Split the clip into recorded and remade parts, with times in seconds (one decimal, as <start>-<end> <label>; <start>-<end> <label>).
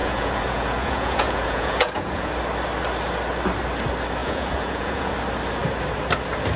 0.0-2.3 remade; 2.3-4.2 recorded; 4.2-5.1 remade; 5.1-6.6 recorded